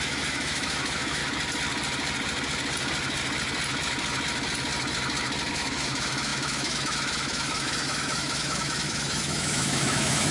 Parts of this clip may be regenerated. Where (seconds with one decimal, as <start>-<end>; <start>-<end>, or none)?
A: 0.0-1.2; 5.5-10.3